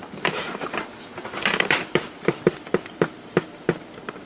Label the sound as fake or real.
fake